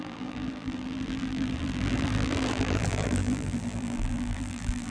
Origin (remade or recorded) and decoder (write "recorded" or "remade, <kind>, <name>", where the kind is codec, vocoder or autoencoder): remade, vocoder, BigVGAN v2